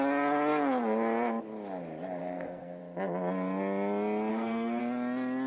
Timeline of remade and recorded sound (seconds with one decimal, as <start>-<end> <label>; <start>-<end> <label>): 0.0-2.2 recorded; 2.2-2.8 remade; 2.8-4.3 recorded; 4.3-4.8 remade; 4.8-5.5 recorded